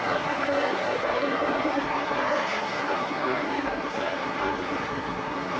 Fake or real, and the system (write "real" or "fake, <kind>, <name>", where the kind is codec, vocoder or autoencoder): fake, codec, SNAC